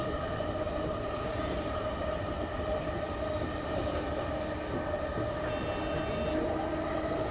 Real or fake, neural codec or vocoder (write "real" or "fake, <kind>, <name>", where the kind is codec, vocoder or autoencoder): real